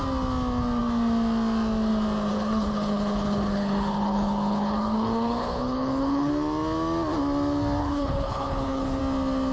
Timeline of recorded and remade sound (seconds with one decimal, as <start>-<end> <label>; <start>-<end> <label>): 0.0-2.3 recorded; 2.3-6.3 remade; 6.3-7.8 recorded; 7.8-9.0 remade; 9.0-9.5 recorded